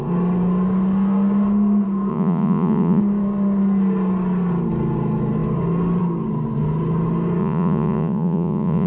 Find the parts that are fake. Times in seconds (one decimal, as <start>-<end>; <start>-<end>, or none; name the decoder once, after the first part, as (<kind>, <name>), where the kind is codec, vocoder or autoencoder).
2.1-3.0 (vocoder, Vocos); 7.4-8.9